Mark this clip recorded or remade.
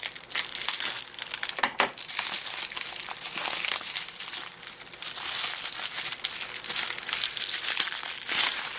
recorded